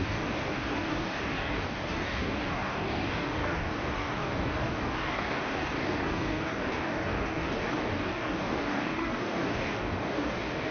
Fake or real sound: fake